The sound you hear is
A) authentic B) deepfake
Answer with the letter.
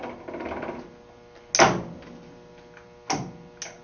A